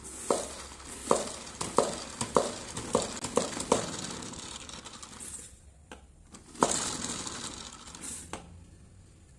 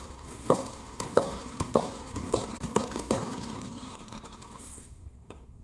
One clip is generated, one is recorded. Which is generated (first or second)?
second